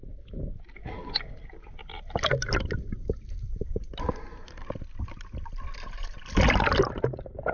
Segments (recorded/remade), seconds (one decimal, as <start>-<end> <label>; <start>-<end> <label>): 0.0-3.7 recorded; 3.7-4.7 remade; 4.7-7.5 recorded